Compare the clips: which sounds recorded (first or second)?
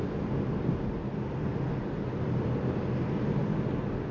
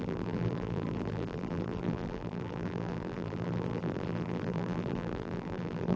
first